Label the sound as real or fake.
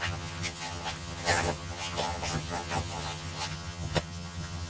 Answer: fake